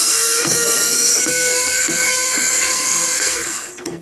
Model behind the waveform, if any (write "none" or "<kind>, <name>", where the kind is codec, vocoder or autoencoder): codec, SNAC